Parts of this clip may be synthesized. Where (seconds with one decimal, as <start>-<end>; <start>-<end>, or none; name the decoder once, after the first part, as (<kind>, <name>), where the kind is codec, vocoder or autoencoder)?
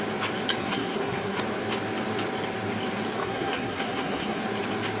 0.6-1.4 (codec, SNAC); 3.2-4.4